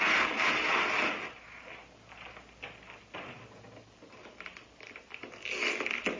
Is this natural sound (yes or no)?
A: yes